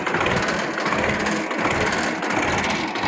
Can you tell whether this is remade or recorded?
recorded